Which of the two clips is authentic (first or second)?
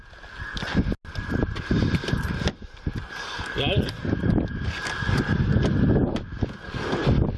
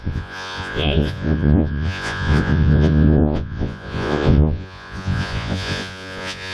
first